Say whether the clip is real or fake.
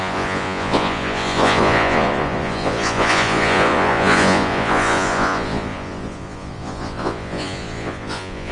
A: fake